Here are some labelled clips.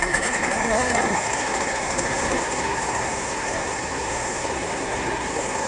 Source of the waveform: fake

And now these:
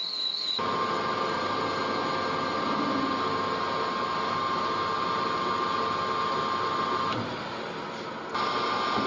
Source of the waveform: real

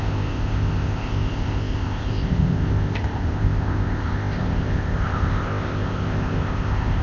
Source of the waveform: fake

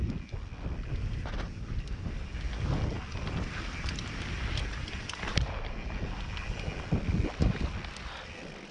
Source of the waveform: real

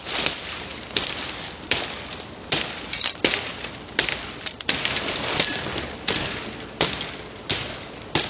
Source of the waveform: real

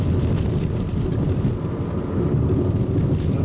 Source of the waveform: real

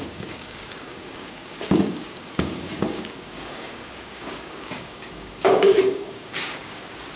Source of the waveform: fake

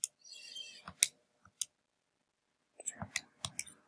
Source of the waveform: real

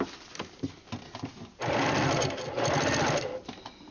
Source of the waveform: real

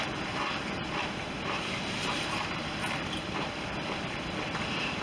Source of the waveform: fake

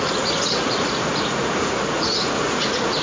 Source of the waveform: fake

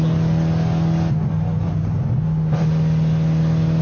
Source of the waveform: real